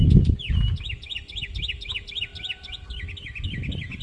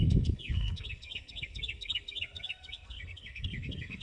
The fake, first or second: second